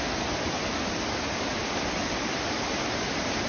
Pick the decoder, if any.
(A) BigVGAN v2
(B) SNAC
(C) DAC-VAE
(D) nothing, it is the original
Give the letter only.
D